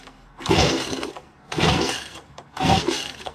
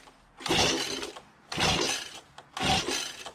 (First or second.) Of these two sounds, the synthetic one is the first